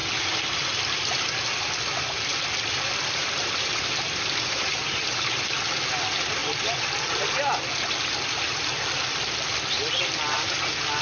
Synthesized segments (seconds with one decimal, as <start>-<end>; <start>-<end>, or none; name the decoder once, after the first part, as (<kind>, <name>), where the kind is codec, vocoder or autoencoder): 2.3-3.6 (vocoder, BigVGAN v2); 6.4-10.0